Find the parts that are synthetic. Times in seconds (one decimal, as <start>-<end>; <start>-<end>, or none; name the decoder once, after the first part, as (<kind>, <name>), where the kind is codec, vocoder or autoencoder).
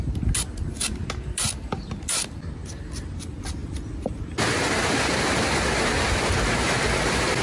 none